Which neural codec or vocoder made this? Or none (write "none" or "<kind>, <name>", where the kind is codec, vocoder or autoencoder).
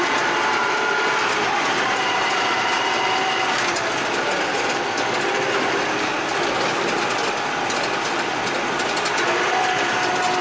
none